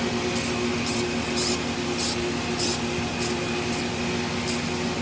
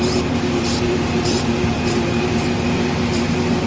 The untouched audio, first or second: first